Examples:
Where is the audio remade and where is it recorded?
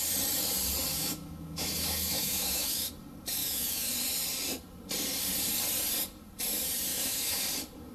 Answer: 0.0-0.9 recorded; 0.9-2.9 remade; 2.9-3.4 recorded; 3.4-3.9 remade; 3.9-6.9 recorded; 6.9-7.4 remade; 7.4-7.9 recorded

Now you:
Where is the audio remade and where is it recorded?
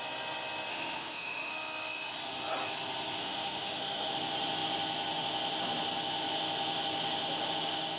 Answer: 0.0-0.7 recorded; 0.7-1.5 remade; 1.5-3.2 recorded; 3.2-4.1 remade; 4.1-8.0 recorded